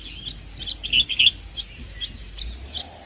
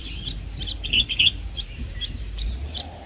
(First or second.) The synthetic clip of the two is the second